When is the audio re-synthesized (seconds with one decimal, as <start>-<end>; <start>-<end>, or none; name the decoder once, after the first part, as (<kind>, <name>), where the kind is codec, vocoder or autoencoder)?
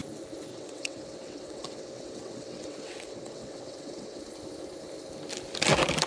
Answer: 0.5-4.2 (vocoder, WaveNeXt)